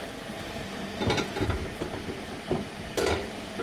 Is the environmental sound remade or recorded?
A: recorded